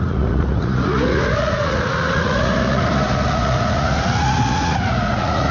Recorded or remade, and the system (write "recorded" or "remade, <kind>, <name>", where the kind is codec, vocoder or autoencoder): remade, vocoder, Vocos